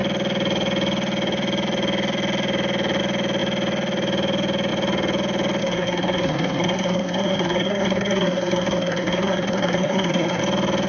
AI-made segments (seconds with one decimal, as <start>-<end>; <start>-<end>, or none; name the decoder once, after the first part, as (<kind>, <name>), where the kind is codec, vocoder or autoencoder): 5.6-10.4 (codec, SNAC)